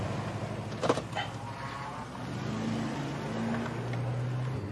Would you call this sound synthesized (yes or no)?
no